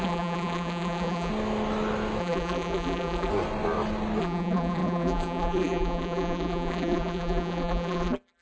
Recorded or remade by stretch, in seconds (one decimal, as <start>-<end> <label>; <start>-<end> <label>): 0.0-1.3 remade; 1.3-2.2 recorded; 2.2-3.3 remade; 3.3-4.2 recorded; 4.2-8.4 remade